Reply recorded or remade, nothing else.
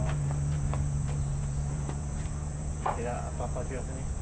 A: remade